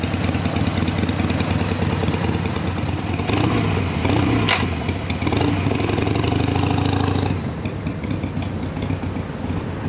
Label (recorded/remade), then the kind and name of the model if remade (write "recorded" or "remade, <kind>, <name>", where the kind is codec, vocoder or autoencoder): recorded